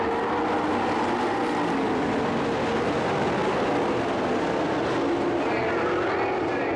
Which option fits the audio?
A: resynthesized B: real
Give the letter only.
B